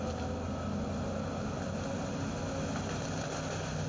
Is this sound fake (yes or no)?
no